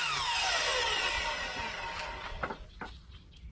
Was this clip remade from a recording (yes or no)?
no